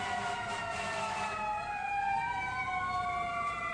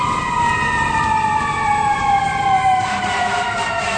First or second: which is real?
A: first